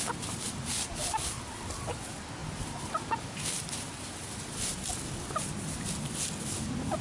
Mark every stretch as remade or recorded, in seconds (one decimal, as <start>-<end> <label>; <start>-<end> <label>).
0.0-7.0 recorded